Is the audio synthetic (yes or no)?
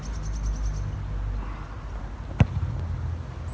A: no